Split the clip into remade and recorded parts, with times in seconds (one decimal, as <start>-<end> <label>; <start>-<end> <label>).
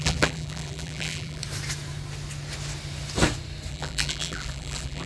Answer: 0.0-1.4 remade; 1.4-3.7 recorded; 3.7-5.1 remade